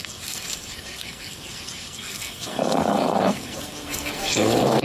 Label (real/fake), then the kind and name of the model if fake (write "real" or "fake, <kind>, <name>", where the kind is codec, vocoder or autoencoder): fake, codec, SNAC